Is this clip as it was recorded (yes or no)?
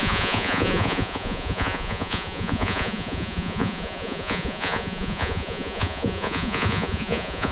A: no